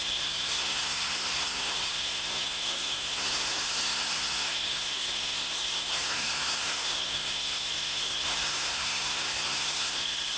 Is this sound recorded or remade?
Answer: remade